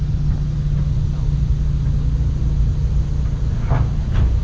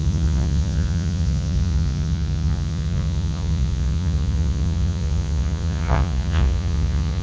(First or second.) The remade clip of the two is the second